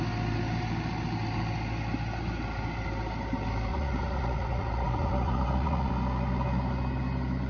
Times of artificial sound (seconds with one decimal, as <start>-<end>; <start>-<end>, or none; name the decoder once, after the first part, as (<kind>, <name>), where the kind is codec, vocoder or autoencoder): 3.7-5.9 (vocoder, Vocos)